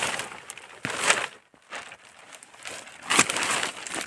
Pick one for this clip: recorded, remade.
recorded